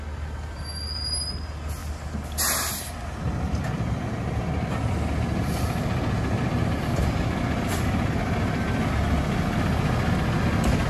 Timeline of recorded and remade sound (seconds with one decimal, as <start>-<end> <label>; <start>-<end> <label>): 0.0-10.9 recorded

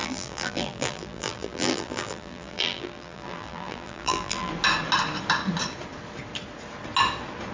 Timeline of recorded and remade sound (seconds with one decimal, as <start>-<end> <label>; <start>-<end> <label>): 0.0-4.5 remade; 4.5-7.5 recorded

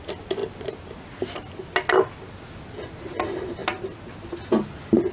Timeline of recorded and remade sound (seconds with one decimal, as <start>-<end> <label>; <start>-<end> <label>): 0.0-5.1 recorded

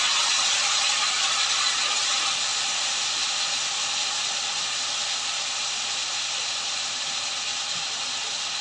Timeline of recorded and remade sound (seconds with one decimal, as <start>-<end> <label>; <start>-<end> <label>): 0.0-2.5 recorded; 2.5-3.1 remade; 3.1-6.0 recorded; 6.0-7.8 remade; 7.8-8.6 recorded

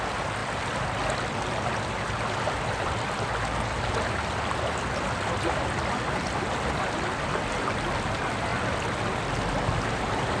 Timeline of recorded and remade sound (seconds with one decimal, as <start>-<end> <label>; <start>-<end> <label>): 0.0-10.4 recorded